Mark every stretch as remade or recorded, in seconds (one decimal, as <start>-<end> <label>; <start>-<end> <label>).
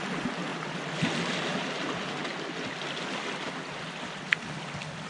0.0-5.1 recorded